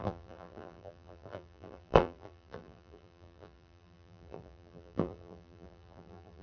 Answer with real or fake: fake